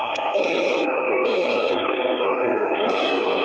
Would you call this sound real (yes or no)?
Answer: no